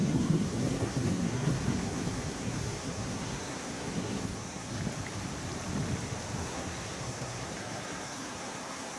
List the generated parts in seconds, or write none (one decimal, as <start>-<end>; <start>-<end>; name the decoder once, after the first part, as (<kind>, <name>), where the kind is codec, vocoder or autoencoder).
0.0-4.8 (codec, SNAC); 6.4-9.0

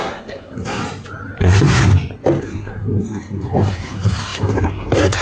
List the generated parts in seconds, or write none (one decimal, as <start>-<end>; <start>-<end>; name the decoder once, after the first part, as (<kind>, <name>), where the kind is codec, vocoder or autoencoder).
0.0-0.8 (codec, SNAC); 1.4-1.9; 2.4-5.2

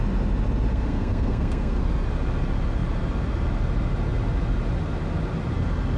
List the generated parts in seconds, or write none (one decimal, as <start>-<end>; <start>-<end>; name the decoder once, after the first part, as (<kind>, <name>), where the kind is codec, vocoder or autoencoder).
0.7-1.8 (codec, SNAC)

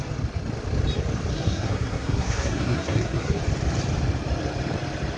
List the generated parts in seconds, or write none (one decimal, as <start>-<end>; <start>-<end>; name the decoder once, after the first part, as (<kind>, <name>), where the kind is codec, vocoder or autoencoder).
1.3-3.4 (codec, SNAC)

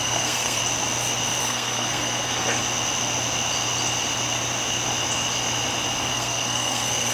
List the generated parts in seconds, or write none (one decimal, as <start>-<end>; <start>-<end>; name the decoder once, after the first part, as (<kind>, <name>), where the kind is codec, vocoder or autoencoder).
0.0-0.6 (codec, SNAC); 1.4-2.6; 6.1-7.1

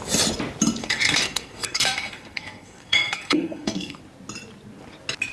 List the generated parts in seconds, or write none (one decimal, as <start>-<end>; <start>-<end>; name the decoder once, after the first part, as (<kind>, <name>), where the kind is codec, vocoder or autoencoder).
0.8-4.0 (codec, SNAC)